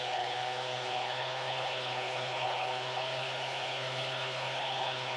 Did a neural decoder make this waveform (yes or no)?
yes